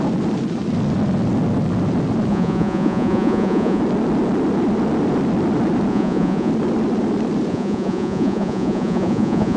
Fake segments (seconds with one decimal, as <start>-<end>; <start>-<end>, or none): 2.3-3.8; 5.9-6.5; 7.5-9.6